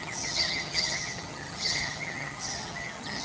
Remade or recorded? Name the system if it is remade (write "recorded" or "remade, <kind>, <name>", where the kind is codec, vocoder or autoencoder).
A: remade, vocoder, HiFi-GAN